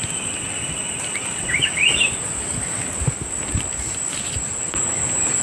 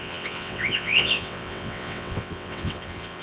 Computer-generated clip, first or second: second